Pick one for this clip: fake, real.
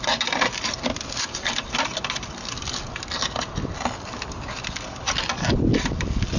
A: real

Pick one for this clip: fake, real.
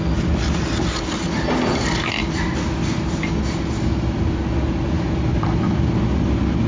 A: real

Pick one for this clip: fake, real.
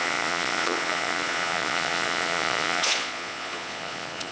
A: fake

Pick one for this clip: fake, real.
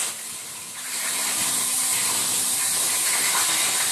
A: real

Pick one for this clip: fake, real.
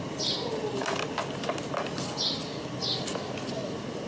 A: real